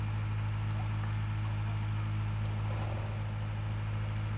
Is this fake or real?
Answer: real